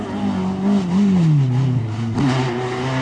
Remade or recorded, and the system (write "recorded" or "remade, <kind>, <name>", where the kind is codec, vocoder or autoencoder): recorded